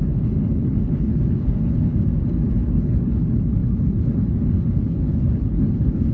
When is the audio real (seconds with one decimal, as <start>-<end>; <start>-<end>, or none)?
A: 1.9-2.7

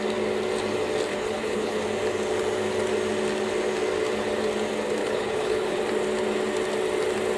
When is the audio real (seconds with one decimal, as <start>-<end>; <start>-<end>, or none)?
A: 0.0-1.1; 1.8-5.0; 5.8-7.4

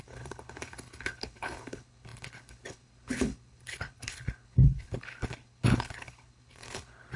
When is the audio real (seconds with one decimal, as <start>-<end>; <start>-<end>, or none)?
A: none

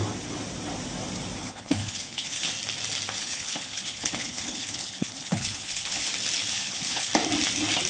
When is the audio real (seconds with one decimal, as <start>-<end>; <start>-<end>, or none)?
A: 0.0-1.4; 2.5-3.2; 6.1-6.5; 7.1-7.9

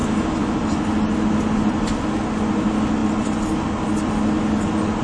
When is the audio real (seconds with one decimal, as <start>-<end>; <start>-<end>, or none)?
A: 0.0-5.0

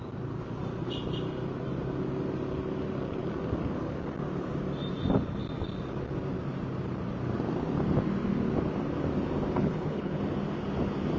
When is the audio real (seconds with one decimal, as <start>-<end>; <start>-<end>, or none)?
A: 0.0-9.6; 10.2-11.2

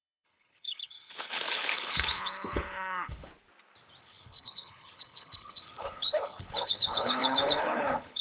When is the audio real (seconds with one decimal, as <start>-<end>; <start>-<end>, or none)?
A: 3.3-4.0